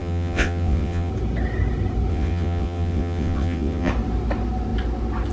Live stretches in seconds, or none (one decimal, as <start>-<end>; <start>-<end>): 1.1-2.1; 3.9-5.3